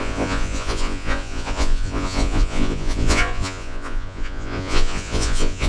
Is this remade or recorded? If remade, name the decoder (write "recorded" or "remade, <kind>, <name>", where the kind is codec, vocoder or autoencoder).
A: remade, vocoder, Vocos